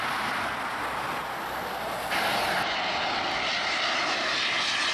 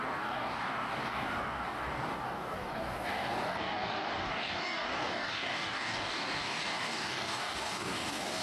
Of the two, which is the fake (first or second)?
second